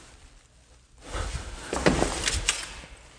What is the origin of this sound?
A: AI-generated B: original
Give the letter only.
B